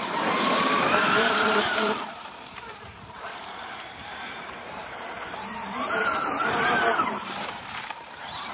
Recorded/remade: remade